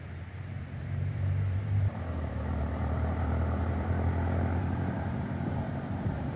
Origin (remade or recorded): remade